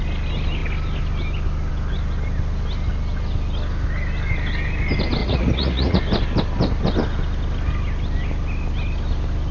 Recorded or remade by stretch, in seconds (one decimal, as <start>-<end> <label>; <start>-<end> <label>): 0.0-5.2 recorded; 5.2-6.0 remade; 6.0-9.5 recorded